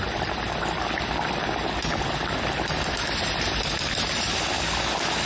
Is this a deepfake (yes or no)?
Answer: no